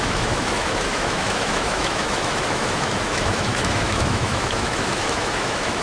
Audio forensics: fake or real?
fake